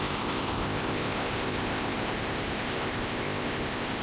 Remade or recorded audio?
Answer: remade